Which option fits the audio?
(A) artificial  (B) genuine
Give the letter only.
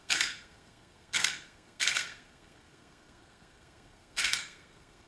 A